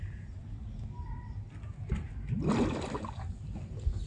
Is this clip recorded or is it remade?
recorded